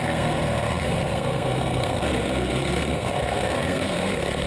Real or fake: fake